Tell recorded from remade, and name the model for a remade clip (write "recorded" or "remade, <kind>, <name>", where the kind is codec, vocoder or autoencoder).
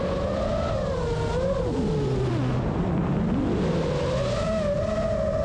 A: recorded